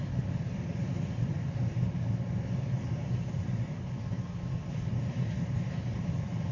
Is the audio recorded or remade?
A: remade